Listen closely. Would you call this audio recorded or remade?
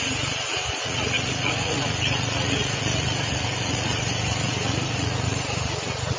remade